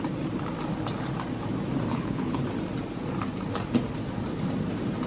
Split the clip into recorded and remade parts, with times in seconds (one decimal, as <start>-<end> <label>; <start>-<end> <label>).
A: 0.0-1.9 recorded; 1.9-2.4 remade; 2.4-5.1 recorded